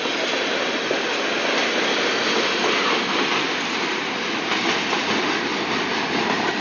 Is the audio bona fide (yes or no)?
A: yes